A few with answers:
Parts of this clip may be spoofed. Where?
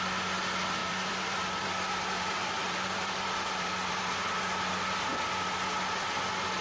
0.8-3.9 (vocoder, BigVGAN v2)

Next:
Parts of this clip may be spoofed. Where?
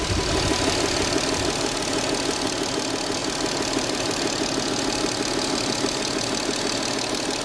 none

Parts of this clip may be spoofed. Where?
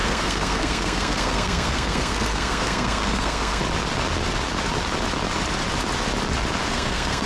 0.0-3.6 (codec, SNAC); 6.7-7.3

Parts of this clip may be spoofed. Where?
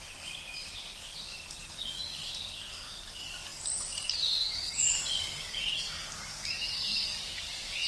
0.0-7.9 (codec, DAC)